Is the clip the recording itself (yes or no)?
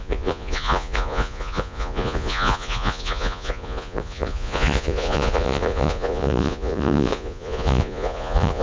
no